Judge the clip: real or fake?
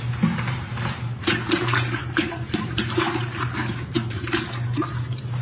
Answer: fake